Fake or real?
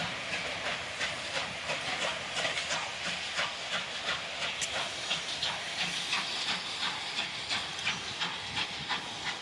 real